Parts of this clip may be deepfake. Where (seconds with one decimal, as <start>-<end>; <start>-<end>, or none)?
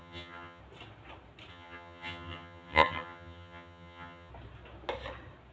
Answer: 0.0-0.6; 1.5-4.3